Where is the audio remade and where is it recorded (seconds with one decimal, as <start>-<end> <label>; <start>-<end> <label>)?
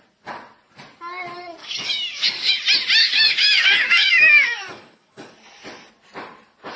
0.0-1.6 recorded; 1.6-2.6 remade; 2.6-3.0 recorded; 3.0-5.3 remade; 5.3-6.8 recorded